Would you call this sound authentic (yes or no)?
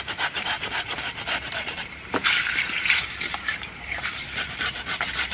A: no